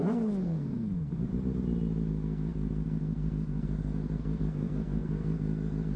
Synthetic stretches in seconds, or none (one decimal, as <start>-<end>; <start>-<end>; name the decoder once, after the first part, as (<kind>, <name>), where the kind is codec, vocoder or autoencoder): 0.0-1.3 (codec, SNAC); 2.1-6.0